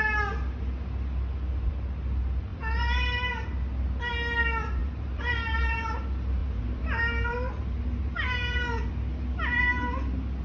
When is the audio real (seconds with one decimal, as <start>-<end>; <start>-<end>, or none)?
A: 0.0-4.8; 6.0-6.4; 9.0-10.4